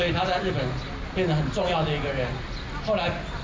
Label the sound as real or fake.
real